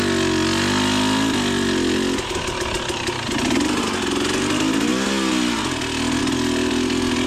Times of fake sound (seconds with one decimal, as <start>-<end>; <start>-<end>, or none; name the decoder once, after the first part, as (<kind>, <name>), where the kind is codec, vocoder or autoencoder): none